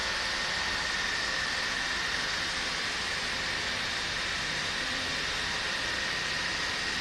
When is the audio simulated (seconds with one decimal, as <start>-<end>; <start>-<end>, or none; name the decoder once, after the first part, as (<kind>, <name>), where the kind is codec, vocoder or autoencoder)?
none